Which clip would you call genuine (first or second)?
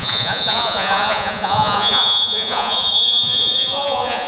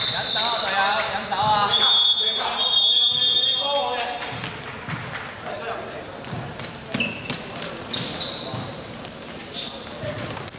second